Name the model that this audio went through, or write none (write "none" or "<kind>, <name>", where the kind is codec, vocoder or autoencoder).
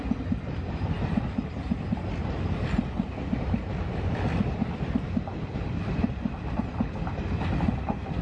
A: vocoder, BigVGAN v2